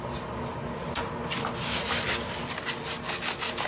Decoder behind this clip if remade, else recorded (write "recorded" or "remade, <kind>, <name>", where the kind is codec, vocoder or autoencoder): recorded